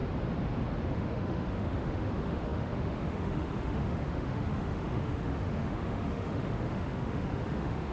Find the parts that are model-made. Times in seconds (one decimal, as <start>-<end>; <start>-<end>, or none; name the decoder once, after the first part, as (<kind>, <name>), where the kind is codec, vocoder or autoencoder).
0.9-7.9 (autoencoder, DAC-VAE)